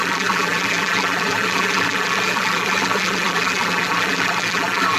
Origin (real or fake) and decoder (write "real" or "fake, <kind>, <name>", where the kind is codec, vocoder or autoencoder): fake, vocoder, BigVGAN v2